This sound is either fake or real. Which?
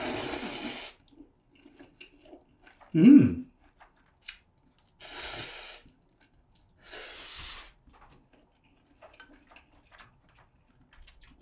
real